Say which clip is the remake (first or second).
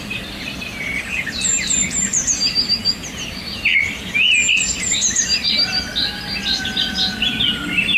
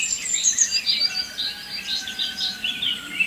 second